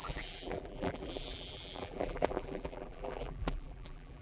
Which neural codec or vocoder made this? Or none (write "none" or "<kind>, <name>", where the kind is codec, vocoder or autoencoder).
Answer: vocoder, BigVGAN v2